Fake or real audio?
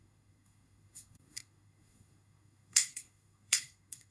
fake